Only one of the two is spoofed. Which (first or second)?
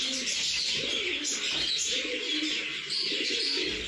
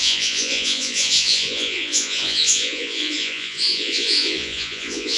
second